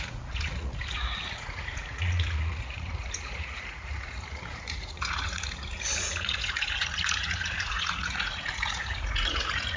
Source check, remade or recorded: remade